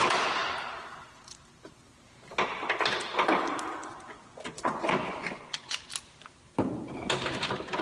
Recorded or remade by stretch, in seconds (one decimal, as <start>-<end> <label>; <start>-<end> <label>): 0.0-3.8 recorded; 3.8-5.8 remade; 5.8-7.8 recorded

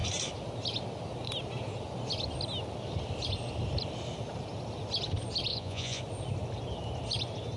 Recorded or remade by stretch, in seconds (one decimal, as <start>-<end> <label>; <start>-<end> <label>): 0.0-5.5 recorded; 5.5-6.0 remade; 6.0-7.6 recorded

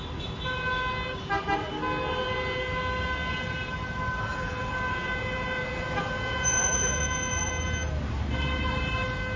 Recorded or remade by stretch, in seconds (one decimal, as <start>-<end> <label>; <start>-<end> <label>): 0.0-4.3 recorded; 4.3-7.5 remade; 7.5-9.4 recorded

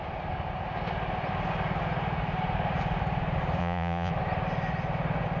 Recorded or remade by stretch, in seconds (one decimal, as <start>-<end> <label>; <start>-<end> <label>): 0.0-3.6 recorded; 3.6-4.1 remade; 4.1-5.4 recorded

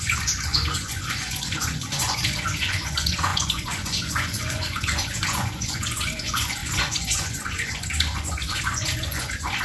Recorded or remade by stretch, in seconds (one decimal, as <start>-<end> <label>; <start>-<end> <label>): 0.0-9.6 remade

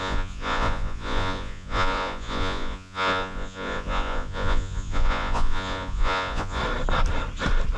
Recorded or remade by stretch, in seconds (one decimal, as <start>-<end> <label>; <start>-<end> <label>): 0.0-6.6 remade; 6.6-7.8 recorded

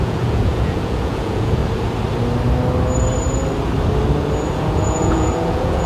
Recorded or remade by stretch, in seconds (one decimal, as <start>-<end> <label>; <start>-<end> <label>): 0.0-1.6 remade; 1.6-4.5 recorded; 4.5-5.9 remade